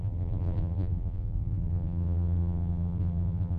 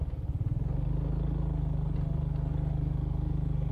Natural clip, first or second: second